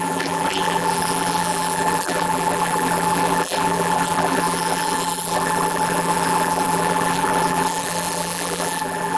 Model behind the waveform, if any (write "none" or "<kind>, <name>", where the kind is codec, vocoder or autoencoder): vocoder, BigVGAN v2